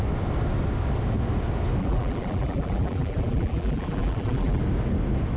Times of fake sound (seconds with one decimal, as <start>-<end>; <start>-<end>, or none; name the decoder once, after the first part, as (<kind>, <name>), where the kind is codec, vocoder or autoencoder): 1.8-4.6 (vocoder, BigVGAN v2)